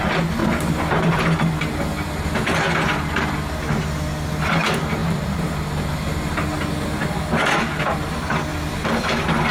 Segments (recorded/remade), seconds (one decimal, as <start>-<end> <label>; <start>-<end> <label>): 0.0-0.4 recorded; 0.4-0.9 remade; 0.9-5.0 recorded; 5.0-5.5 remade; 5.5-8.5 recorded; 8.5-9.0 remade; 9.0-9.5 recorded